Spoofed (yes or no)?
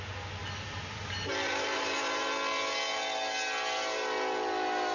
no